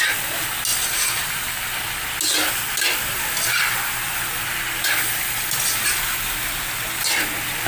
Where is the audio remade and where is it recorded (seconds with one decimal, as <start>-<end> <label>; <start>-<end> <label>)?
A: 0.0-7.7 recorded